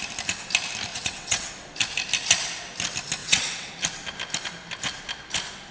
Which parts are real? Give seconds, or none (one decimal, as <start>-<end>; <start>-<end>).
0.0-0.9; 1.5-3.2; 3.7-5.7